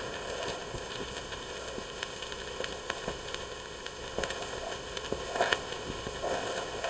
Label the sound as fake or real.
fake